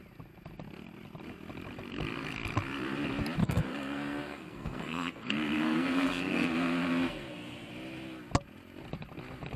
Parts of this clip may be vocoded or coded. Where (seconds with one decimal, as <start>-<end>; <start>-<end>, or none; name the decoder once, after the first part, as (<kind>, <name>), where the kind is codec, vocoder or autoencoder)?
3.4-7.7 (codec, SNAC)